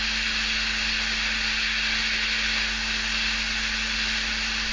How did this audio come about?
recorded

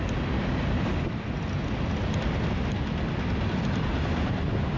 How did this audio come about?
recorded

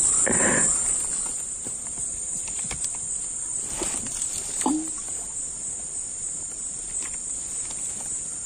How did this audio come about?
recorded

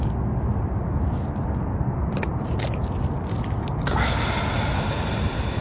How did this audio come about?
recorded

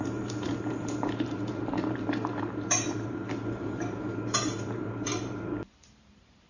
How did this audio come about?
remade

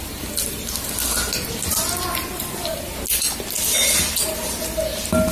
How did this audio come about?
recorded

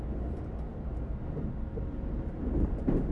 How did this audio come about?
recorded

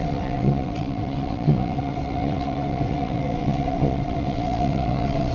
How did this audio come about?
remade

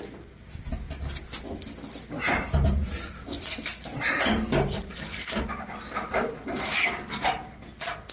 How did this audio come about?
recorded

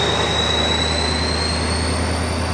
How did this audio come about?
recorded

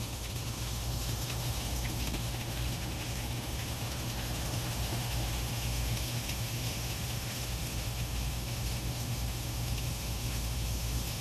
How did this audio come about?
remade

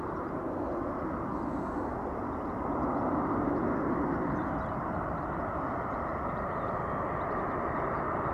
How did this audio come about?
recorded